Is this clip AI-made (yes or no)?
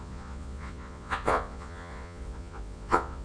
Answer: yes